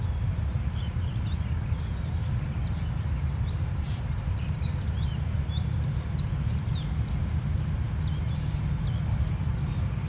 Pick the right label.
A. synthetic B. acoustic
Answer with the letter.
B